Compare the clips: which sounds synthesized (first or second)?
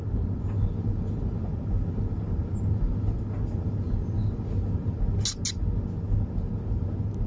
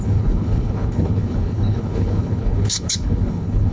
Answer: second